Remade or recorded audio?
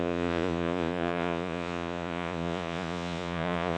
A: remade